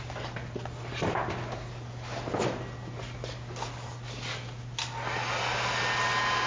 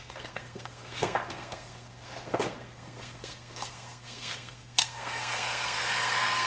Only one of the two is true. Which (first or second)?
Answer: first